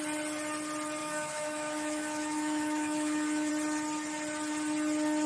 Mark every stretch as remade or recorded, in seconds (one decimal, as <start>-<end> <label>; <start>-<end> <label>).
0.0-1.0 recorded; 1.0-3.5 remade; 3.5-5.3 recorded